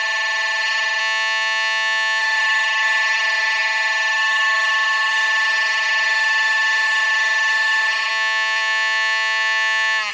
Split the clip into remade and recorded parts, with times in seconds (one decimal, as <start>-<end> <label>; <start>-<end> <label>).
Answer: 0.0-1.0 remade; 1.0-2.2 recorded; 2.2-8.1 remade; 8.1-10.1 recorded